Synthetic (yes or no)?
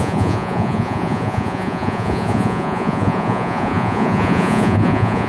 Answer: yes